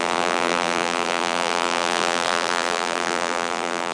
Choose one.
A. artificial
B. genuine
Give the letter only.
A